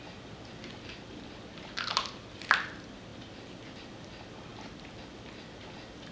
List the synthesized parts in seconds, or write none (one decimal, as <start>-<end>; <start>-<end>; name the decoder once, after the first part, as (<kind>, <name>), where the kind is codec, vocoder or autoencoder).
none